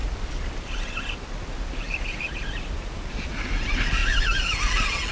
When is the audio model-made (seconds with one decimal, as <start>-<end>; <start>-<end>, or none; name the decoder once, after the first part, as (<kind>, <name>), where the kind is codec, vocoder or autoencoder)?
3.1-4.0 (vocoder, BigVGAN v2)